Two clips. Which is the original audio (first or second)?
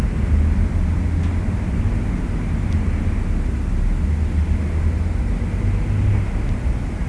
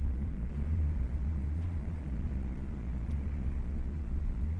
first